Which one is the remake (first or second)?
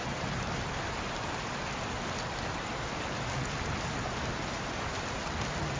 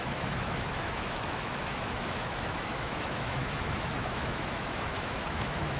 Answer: second